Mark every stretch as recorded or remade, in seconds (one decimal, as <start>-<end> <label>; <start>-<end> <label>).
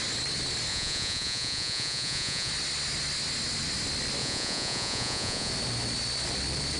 0.0-0.7 recorded; 0.7-2.5 remade; 2.5-4.2 recorded; 4.2-5.5 remade; 5.5-6.8 recorded